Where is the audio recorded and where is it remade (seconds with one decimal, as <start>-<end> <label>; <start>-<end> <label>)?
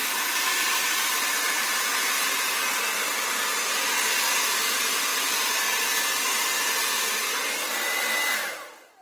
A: 0.0-3.1 remade; 3.1-5.1 recorded; 5.1-5.6 remade; 5.6-9.0 recorded